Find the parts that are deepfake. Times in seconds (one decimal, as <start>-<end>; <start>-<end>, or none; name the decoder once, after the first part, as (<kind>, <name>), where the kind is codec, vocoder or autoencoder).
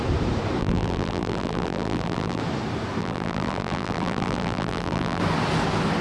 0.6-2.4 (vocoder, BigVGAN v2); 3.0-5.2